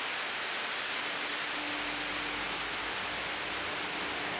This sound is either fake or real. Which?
real